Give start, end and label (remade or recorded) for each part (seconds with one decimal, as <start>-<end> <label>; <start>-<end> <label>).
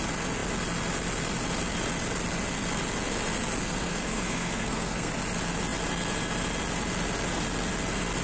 0.0-3.6 recorded; 3.6-5.1 remade; 5.1-8.2 recorded